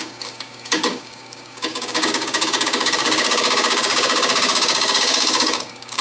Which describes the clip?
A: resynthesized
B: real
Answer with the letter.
A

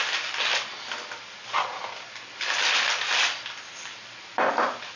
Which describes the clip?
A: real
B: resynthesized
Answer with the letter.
A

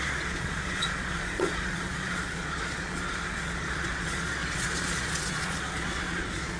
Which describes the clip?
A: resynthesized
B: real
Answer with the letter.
A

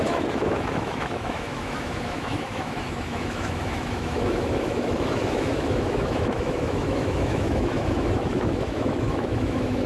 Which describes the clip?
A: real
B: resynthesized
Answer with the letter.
B